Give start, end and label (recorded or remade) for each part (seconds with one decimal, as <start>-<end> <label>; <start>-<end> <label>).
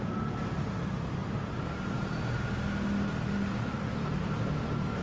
0.0-5.0 recorded